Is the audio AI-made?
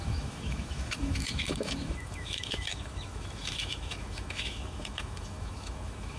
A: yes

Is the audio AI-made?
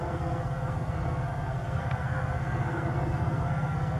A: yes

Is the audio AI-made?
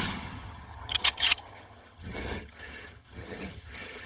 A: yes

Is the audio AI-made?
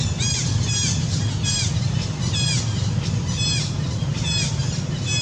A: no